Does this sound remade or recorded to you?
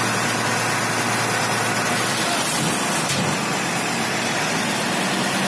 recorded